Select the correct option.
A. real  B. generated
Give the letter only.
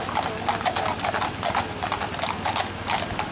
A